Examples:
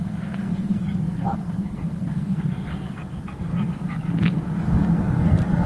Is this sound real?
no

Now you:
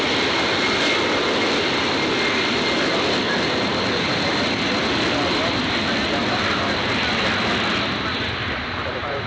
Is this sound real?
yes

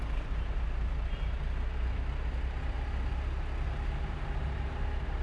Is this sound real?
yes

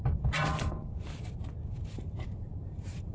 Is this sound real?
no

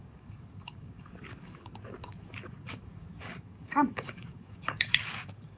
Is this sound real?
no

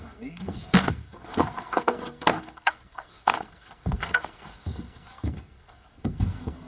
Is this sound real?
no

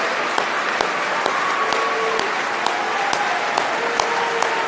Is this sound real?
yes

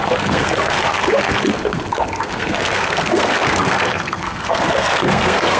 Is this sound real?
no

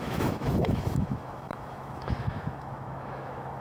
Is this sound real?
no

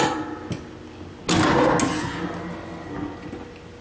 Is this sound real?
yes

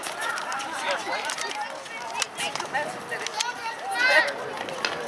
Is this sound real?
yes